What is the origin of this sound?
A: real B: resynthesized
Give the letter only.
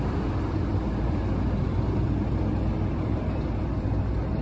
B